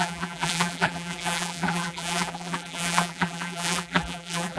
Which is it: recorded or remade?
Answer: remade